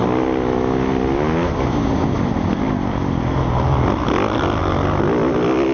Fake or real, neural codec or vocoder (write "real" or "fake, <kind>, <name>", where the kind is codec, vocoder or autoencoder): real